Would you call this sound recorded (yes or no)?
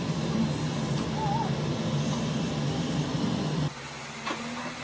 yes